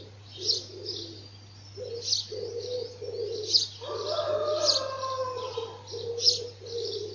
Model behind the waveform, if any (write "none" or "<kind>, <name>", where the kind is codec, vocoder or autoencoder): none